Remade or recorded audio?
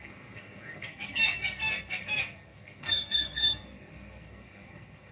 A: remade